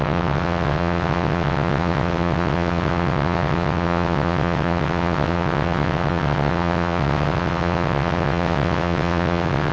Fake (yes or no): yes